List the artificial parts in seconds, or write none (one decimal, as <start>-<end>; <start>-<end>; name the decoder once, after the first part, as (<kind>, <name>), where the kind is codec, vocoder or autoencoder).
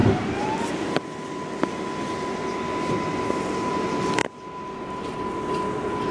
none